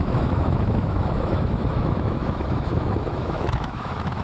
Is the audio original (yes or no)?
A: no